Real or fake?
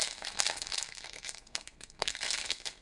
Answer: fake